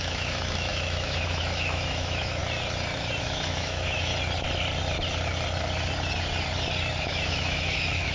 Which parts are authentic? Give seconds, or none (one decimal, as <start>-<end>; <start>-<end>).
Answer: 2.4-3.2; 4.1-7.0